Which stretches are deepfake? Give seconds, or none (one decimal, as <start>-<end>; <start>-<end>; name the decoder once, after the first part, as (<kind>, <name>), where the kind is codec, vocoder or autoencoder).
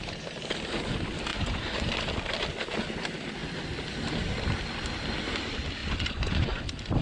1.3-1.9 (vocoder, Vocos); 5.8-6.6